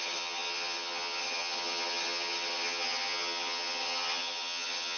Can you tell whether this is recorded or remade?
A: remade